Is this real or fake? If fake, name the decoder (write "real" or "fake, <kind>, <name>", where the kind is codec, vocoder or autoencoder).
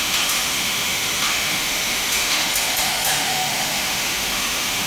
fake, autoencoder, DAC-VAE